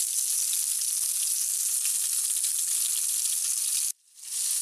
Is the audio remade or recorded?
recorded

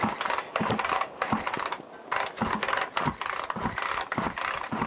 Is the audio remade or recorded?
recorded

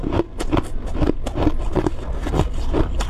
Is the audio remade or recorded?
recorded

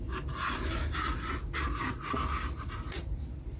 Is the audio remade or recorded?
recorded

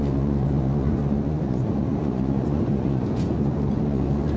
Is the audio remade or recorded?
remade